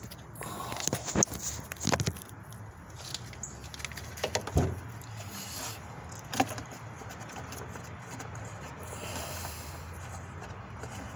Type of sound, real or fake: real